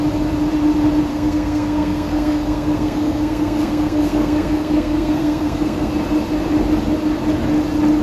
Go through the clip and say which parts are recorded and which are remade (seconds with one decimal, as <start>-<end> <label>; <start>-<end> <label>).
0.0-1.1 recorded; 1.1-5.9 remade; 5.9-8.0 recorded